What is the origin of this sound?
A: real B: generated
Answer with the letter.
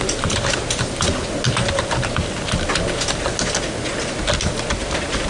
A